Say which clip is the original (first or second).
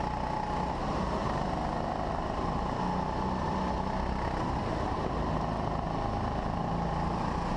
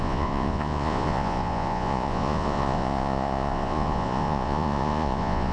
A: first